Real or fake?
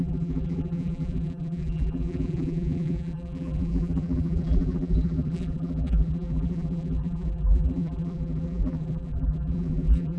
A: fake